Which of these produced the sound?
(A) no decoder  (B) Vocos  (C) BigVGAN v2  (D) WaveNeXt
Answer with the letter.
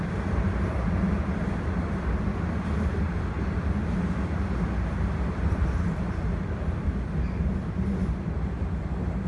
A